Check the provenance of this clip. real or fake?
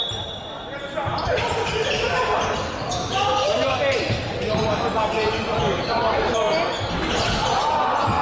real